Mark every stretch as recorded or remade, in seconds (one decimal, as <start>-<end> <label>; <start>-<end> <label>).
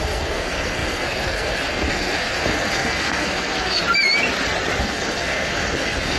0.0-3.8 remade; 3.8-4.8 recorded; 4.8-6.2 remade